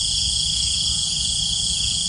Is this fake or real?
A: fake